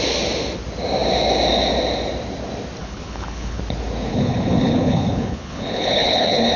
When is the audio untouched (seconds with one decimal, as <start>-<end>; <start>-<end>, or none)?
0.0-2.8; 3.6-4.1